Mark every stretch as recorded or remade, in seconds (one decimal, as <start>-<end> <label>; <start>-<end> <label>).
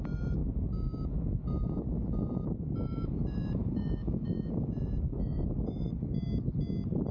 0.0-5.9 remade; 5.9-7.1 recorded